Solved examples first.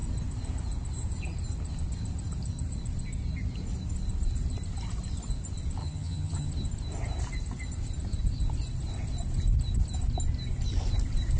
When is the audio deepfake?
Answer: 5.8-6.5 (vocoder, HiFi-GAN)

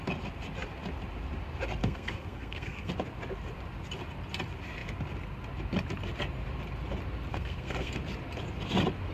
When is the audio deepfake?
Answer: 1.8-2.9 (codec, SNAC); 7.3-7.9

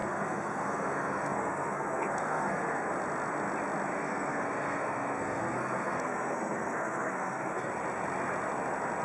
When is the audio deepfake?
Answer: 0.0-2.9 (codec, SNAC); 3.9-7.7

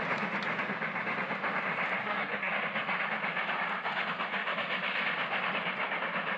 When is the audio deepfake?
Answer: 2.0-2.5 (codec, SNAC)

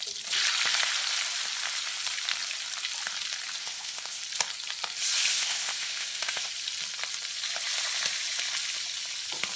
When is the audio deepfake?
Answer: 3.6-4.2 (codec, ZipCodec); 5.3-6.5

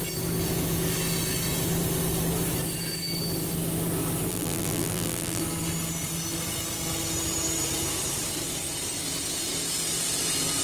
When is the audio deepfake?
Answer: 4.3-5.4 (vocoder, BigVGAN v2)

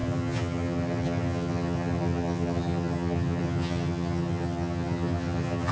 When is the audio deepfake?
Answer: 0.0-5.7 (vocoder, HiFi-GAN)

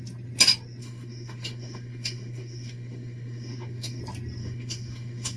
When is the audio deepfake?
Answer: 0.8-4.0 (autoencoder, DAC-VAE); 4.4-5.4